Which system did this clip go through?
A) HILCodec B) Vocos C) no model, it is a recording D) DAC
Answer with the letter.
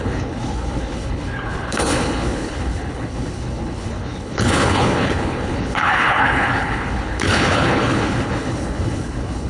A